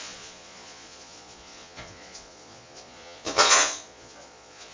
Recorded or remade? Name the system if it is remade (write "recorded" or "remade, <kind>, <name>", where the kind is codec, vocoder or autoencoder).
remade, vocoder, Vocos